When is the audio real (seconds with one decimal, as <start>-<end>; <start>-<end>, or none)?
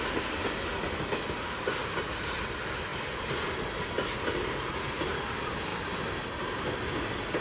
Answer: 0.0-7.4